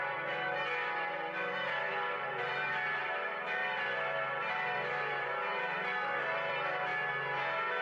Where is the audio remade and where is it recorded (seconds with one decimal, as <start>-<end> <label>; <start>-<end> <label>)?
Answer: 0.0-6.9 remade; 6.9-7.8 recorded